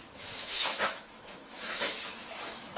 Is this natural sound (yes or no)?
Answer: no